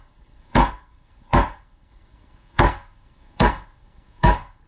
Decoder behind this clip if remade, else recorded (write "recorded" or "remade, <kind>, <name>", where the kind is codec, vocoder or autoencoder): remade, codec, SNAC